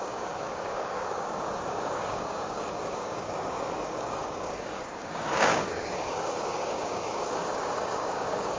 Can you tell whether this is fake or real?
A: fake